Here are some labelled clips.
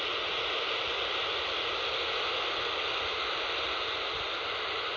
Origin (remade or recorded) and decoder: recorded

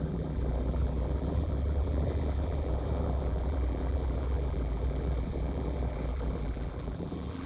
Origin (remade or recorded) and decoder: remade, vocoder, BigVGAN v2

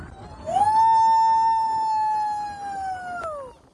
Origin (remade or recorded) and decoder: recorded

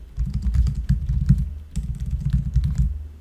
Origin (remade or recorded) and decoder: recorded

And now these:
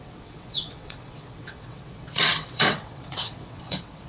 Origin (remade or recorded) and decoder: remade, vocoder, WaveNeXt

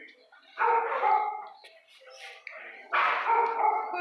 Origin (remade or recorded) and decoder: recorded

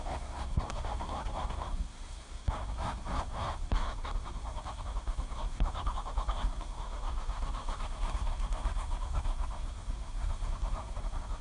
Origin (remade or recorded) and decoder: remade, codec, SNAC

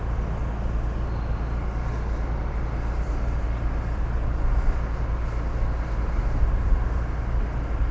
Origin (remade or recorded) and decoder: recorded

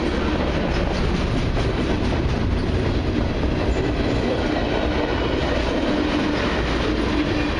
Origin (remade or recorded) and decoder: recorded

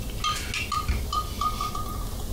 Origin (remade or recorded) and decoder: recorded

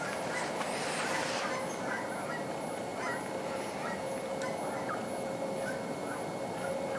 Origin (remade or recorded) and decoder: recorded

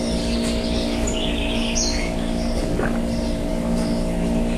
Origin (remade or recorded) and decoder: remade, codec, DAC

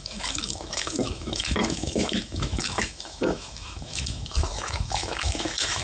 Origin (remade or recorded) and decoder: remade, autoencoder, DAC-VAE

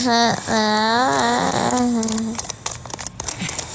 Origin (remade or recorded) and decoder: recorded